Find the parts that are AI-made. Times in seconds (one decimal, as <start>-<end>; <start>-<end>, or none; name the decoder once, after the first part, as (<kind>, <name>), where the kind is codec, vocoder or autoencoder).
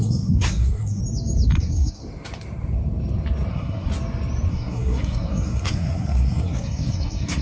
0.0-1.0 (codec, SNAC); 1.6-2.0; 3.5-3.9; 4.5-7.4